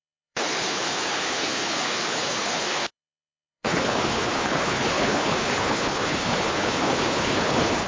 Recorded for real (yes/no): no